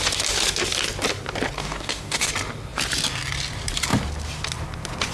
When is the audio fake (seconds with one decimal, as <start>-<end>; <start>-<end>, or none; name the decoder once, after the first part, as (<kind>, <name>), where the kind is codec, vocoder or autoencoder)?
1.6-2.3 (codec, DAC)